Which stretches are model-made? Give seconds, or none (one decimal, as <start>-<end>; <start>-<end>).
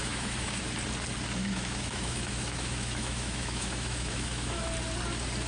0.0-0.6; 1.4-4.7